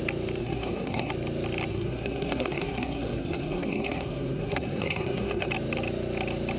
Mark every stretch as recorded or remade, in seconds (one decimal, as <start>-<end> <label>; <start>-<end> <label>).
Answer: 0.0-0.4 recorded; 0.4-1.1 remade; 1.1-1.7 recorded; 1.7-5.5 remade; 5.5-6.6 recorded